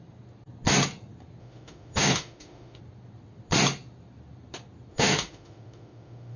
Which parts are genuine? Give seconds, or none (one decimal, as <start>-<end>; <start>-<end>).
0.0-1.4; 2.8-4.9